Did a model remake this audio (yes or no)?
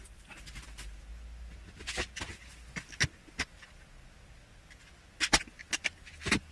no